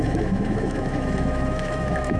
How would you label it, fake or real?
fake